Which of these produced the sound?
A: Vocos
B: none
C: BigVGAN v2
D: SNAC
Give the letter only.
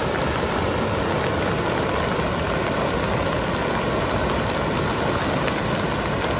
B